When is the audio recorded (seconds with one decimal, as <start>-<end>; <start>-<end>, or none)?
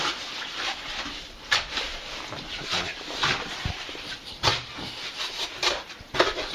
4.5-5.3